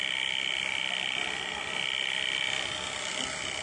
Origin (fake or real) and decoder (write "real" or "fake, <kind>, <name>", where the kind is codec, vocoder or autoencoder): real